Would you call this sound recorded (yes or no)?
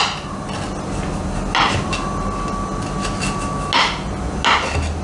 yes